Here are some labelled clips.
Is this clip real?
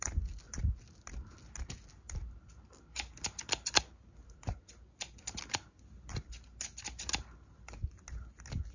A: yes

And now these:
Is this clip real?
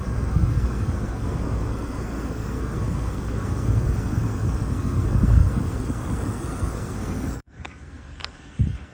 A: no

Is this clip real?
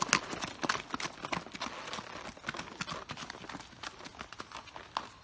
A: yes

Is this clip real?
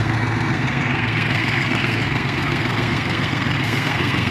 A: no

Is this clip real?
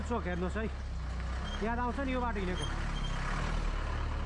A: yes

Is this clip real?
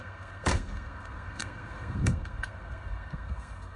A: no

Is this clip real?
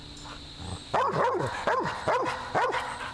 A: yes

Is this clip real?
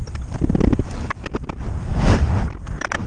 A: yes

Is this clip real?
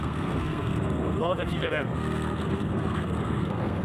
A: no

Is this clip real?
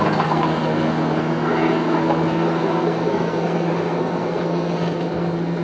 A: no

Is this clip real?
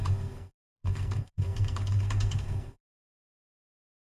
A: no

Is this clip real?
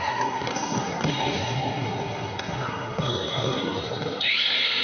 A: no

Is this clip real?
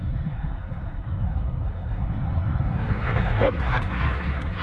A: no